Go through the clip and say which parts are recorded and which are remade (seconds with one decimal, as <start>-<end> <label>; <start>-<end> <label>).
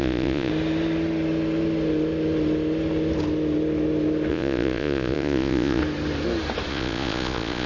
0.0-0.5 remade; 0.5-4.3 recorded; 4.3-5.8 remade; 5.8-6.7 recorded; 6.7-7.7 remade